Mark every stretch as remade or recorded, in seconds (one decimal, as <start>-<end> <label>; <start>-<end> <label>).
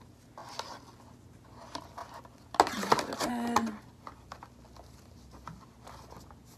0.0-6.6 recorded